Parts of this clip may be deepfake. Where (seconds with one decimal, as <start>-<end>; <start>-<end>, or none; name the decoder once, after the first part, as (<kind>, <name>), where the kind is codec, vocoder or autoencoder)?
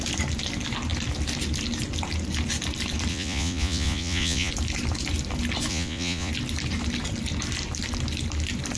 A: 3.1-4.5 (vocoder, Vocos); 5.7-6.3